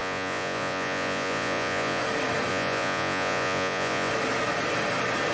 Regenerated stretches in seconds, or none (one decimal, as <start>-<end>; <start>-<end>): 0.0-2.0; 2.5-4.1